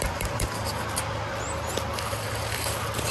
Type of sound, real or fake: fake